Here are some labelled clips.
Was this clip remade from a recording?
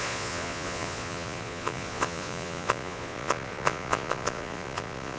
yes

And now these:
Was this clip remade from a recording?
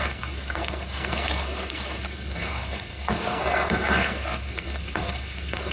yes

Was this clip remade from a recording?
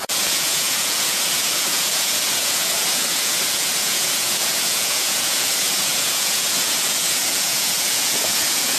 yes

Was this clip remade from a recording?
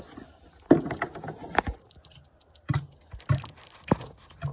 no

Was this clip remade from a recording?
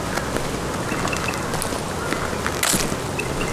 no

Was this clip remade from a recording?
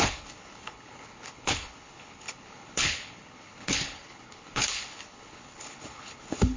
yes